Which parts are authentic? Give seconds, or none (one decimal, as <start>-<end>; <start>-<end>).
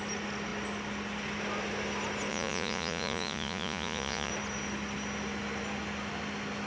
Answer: 0.0-2.3; 4.3-6.7